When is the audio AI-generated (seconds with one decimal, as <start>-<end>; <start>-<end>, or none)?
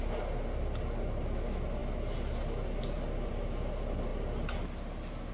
none